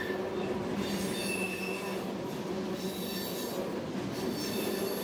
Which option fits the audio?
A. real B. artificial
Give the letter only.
A